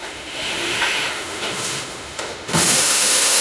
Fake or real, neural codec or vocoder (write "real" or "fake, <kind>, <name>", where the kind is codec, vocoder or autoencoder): fake, autoencoder, DAC-VAE